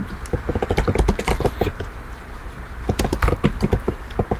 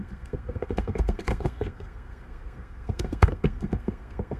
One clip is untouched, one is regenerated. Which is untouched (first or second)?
first